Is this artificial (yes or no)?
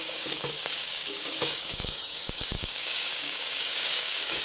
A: yes